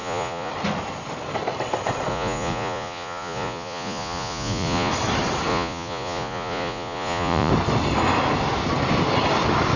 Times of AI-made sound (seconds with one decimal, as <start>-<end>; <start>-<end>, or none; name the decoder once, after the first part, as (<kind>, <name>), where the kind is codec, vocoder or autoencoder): 0.0-0.5 (vocoder, Vocos); 2.1-4.9; 5.5-7.5